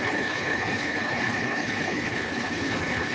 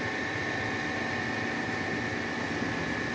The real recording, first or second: second